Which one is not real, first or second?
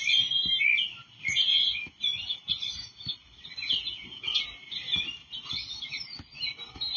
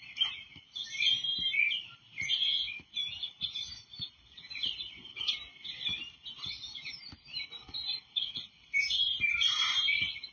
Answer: second